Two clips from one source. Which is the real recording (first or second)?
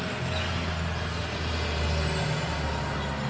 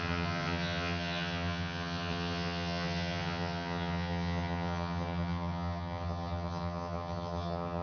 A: first